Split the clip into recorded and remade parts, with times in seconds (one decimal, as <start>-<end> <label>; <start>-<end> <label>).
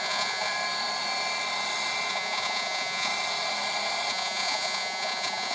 0.0-0.5 remade; 0.5-2.1 recorded; 2.1-3.1 remade; 3.1-4.1 recorded; 4.1-5.5 remade